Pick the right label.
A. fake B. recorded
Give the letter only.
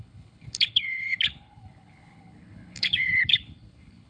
A